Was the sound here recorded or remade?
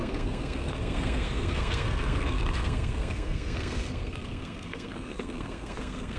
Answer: remade